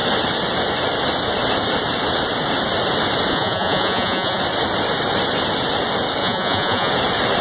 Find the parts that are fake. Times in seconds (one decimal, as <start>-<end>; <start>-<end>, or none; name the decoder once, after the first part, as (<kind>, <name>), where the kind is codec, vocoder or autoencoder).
3.3-4.4 (vocoder, Vocos); 6.2-6.9